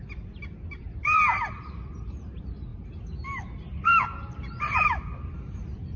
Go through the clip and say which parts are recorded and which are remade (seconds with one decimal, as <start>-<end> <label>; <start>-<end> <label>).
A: 0.0-6.0 recorded